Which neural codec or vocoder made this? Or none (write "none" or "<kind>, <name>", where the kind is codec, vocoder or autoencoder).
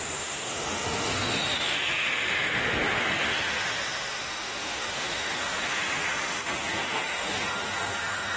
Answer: autoencoder, DAC-VAE